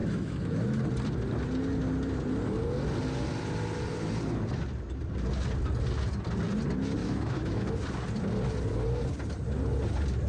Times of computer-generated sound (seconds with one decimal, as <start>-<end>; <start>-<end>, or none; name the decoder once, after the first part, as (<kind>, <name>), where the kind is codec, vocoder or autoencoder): 0.0-0.8 (autoencoder, DAC-VAE); 7.0-7.7